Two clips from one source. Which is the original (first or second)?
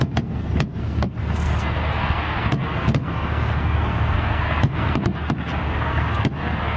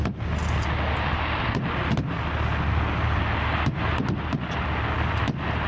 second